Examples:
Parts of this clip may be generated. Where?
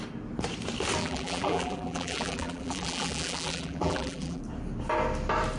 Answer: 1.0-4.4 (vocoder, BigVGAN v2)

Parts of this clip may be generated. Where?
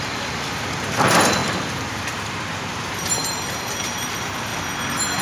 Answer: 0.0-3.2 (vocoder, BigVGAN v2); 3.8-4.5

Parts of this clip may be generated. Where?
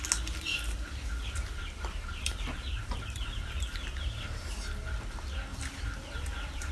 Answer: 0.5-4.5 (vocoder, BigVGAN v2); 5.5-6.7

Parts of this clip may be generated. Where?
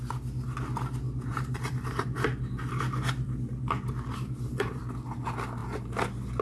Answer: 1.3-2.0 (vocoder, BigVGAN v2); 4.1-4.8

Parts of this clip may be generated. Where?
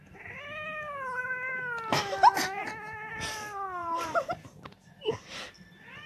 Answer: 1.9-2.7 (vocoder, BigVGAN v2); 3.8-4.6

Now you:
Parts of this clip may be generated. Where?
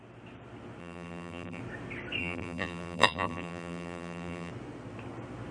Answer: 0.8-1.6 (vocoder, BigVGAN v2); 2.2-4.5